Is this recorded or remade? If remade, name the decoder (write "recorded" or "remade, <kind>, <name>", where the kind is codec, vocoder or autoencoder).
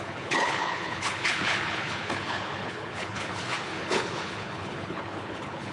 remade, codec, HILCodec